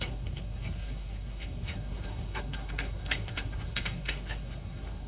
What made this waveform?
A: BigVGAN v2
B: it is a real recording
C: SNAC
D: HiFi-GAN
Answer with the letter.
C